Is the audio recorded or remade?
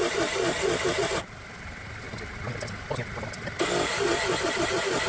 recorded